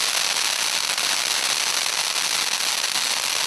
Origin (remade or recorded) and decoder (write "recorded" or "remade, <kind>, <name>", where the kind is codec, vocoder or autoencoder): recorded